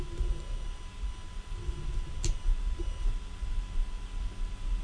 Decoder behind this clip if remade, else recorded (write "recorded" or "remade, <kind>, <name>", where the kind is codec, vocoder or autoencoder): recorded